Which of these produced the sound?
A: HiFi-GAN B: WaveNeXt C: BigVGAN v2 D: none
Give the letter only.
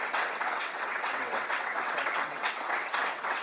B